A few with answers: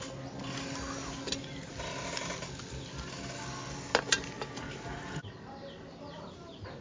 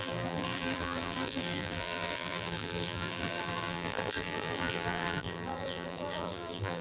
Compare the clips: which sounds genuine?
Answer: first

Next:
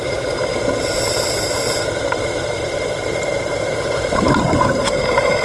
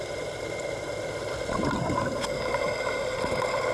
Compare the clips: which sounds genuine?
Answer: second